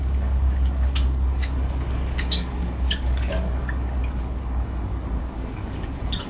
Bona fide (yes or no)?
no